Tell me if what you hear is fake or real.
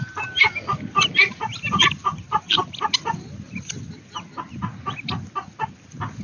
real